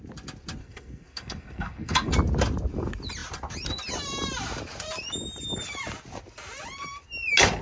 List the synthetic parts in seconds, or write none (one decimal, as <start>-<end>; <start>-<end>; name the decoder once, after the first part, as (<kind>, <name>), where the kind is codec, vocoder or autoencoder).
0.6-2.1 (codec, SNAC)

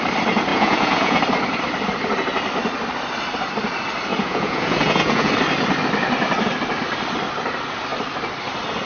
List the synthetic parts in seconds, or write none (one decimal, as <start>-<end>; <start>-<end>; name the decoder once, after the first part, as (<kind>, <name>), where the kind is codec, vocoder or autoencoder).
0.5-1.2 (vocoder, Vocos); 4.1-5.3